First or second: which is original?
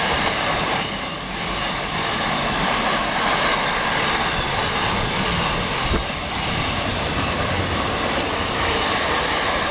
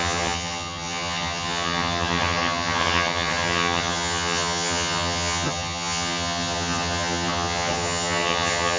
first